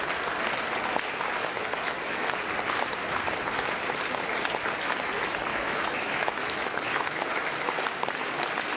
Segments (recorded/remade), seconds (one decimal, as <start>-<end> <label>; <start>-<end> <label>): 0.0-1.4 recorded; 1.4-1.9 remade; 1.9-5.5 recorded; 5.5-7.4 remade; 7.4-8.8 recorded